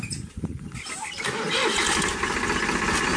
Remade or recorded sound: recorded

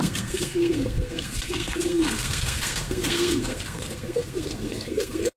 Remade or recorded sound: remade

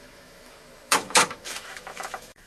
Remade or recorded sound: remade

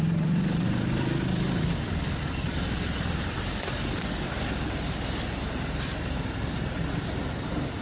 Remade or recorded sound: remade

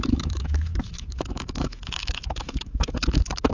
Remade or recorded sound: remade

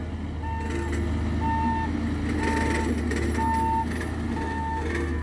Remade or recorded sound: recorded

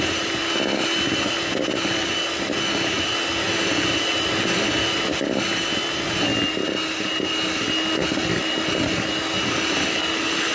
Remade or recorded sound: recorded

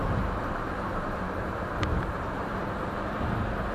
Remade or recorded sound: remade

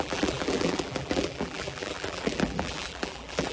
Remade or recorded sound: remade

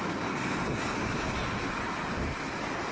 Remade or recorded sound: recorded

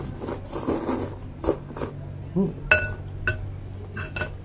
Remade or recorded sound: recorded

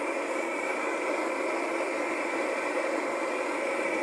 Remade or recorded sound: recorded